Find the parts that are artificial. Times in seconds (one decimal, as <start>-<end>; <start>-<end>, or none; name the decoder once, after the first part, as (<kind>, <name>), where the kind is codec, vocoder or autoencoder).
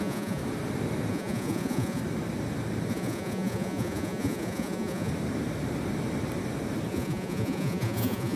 0.0-0.4 (vocoder, Vocos); 1.1-2.0; 2.9-5.1; 6.9-8.4